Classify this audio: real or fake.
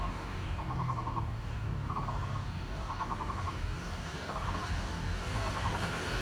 fake